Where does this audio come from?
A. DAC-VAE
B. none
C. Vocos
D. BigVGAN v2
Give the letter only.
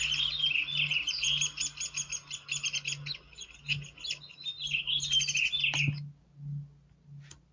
B